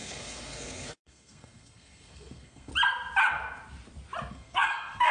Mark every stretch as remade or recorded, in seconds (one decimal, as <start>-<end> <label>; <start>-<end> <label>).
0.0-2.7 remade; 2.7-4.3 recorded; 4.3-5.1 remade